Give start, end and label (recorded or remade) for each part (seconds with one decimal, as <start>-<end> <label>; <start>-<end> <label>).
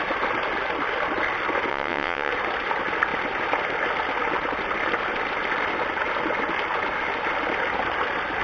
0.0-1.7 recorded; 1.7-2.3 remade; 2.3-8.4 recorded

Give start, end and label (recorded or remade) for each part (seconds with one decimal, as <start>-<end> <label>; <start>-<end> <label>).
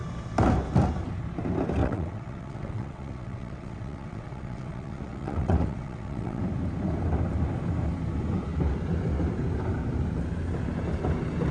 0.0-1.8 recorded; 1.8-6.4 remade; 6.4-11.5 recorded